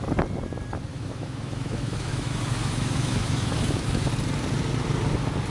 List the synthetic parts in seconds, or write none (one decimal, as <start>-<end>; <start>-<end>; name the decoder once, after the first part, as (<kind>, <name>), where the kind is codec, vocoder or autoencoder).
0.9-4.1 (autoencoder, DAC-VAE)

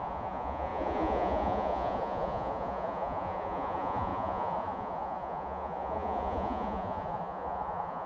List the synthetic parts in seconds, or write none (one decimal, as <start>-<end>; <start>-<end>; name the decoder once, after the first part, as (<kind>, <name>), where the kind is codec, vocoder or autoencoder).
0.0-8.1 (vocoder, Vocos)

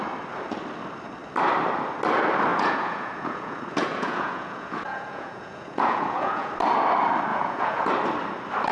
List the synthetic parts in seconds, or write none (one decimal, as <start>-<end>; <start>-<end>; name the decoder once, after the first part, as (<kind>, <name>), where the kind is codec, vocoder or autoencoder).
2.5-6.5 (vocoder, Vocos); 7.3-7.9